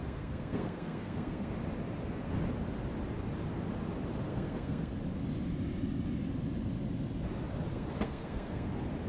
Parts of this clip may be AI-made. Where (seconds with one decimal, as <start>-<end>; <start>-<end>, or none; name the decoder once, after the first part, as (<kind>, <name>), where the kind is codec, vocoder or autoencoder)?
0.0-1.5 (codec, SNAC); 4.3-4.9; 7.7-8.7

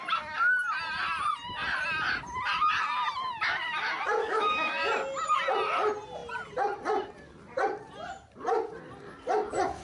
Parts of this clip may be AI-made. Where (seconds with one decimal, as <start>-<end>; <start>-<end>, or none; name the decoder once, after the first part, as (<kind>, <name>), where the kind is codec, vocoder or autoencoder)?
4.2-4.8 (autoencoder, DAC-VAE)

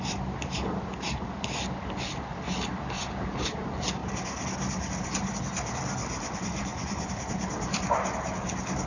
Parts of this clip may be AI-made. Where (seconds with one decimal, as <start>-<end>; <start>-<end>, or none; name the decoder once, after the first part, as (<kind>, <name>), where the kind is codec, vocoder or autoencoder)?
6.0-7.1 (vocoder, Vocos)

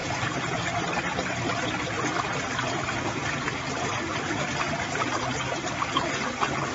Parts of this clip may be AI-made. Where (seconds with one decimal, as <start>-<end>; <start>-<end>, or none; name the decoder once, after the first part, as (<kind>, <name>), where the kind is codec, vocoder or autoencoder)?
0.0-0.6 (vocoder, Vocos)

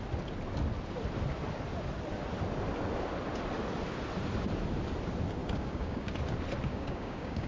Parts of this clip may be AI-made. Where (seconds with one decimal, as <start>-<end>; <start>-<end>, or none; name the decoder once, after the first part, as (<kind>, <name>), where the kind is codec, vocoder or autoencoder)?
5.4-6.1 (codec, DAC); 6.7-7.5

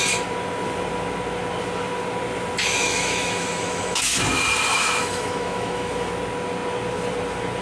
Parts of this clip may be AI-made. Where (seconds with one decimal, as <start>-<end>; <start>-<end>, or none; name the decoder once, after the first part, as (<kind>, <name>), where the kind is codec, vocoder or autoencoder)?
2.8-4.2 (autoencoder, DAC-VAE); 4.7-6.1

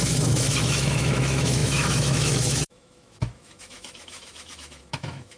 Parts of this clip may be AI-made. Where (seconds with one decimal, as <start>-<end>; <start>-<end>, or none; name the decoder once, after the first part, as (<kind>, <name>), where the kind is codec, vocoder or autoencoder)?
0.0-5.4 (autoencoder, DAC-VAE)